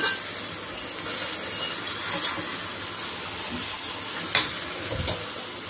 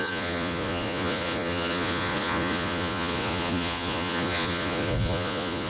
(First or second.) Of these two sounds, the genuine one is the first